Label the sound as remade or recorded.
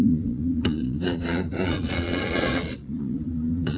remade